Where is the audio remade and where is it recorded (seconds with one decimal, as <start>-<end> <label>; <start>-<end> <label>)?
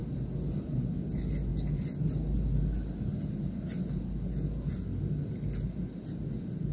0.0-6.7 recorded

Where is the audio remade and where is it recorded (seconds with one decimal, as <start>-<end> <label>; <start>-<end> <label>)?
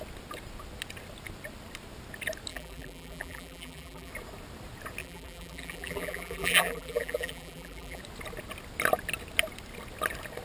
0.0-2.5 recorded; 2.5-4.1 remade; 4.1-5.0 recorded; 5.0-8.0 remade; 8.0-10.4 recorded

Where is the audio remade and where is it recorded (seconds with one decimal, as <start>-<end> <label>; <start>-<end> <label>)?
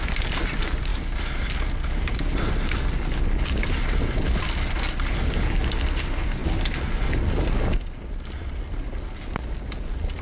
0.0-6.4 recorded; 6.4-7.1 remade; 7.1-10.2 recorded